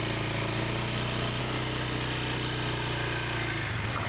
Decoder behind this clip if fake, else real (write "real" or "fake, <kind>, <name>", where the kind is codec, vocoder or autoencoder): real